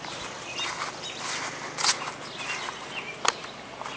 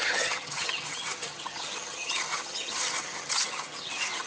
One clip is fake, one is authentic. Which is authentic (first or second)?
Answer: first